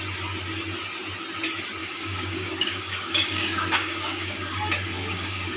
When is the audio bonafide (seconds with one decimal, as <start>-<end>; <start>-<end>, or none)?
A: 0.0-1.8